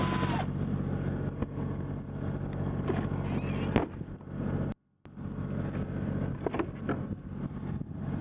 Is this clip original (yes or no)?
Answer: yes